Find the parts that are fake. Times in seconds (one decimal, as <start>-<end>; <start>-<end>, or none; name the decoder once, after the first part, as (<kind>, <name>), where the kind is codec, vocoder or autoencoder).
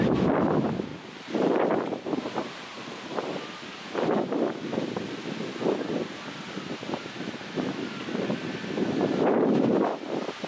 0.9-3.3 (vocoder, BigVGAN v2)